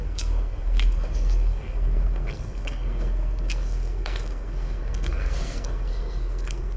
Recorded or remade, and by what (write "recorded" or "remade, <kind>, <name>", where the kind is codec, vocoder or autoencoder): remade, codec, SNAC